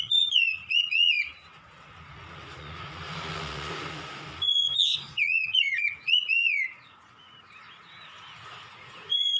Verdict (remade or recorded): remade